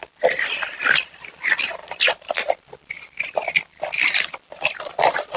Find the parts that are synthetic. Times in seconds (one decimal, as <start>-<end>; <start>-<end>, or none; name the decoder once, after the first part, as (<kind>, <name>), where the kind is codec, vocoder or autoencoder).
none